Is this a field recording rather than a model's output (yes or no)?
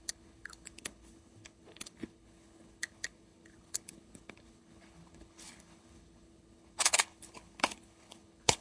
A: no